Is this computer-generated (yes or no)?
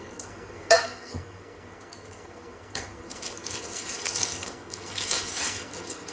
yes